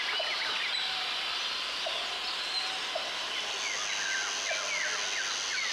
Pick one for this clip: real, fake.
real